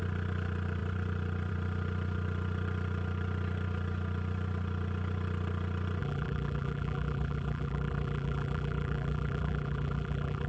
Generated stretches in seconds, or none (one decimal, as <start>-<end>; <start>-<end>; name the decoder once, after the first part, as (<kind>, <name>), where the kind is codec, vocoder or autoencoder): 6.0-10.5 (vocoder, BigVGAN v2)